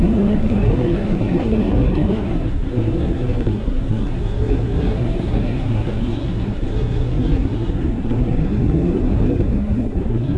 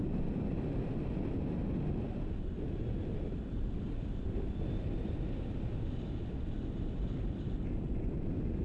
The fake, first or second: first